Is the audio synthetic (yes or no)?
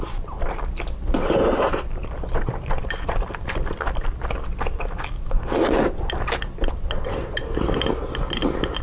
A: no